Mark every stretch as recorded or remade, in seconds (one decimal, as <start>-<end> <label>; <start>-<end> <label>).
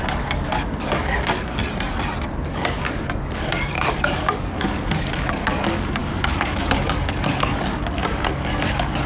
0.0-1.6 remade; 1.6-2.5 recorded; 2.5-9.1 remade